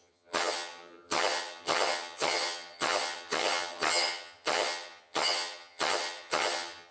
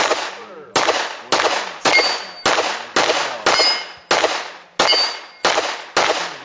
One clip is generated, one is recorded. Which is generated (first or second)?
first